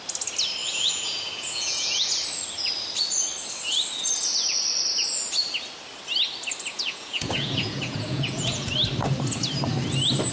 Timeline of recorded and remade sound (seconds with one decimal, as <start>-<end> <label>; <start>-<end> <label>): 0.0-0.6 recorded; 0.6-2.1 remade; 2.1-6.7 recorded; 6.7-8.7 remade; 8.7-10.3 recorded